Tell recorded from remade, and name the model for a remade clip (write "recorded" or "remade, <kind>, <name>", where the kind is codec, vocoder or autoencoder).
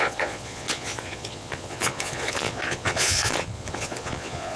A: remade, vocoder, Vocos